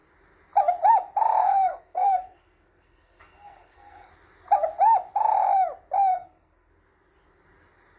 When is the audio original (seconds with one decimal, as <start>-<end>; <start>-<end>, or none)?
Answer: 0.0-1.4; 4.1-6.1; 6.7-8.0